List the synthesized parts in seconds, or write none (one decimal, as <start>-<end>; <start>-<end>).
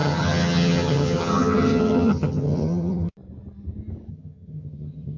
0.0-3.1; 4.1-5.2